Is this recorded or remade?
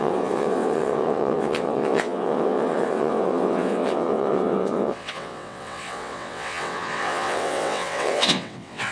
remade